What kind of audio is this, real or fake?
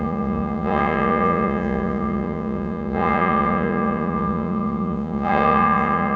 fake